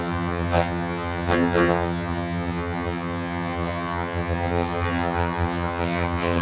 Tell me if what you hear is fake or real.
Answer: fake